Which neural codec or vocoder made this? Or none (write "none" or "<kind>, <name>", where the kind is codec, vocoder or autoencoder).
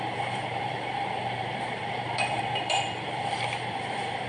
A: vocoder, BigVGAN v2